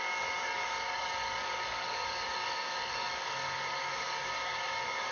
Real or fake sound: fake